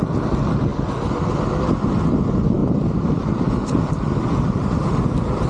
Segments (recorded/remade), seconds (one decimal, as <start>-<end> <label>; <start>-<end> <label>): 0.0-5.5 recorded